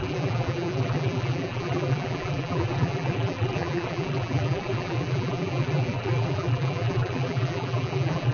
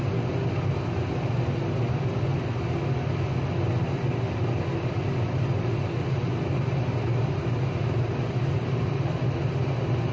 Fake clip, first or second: first